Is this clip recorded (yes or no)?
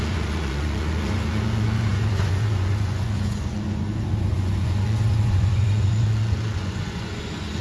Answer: no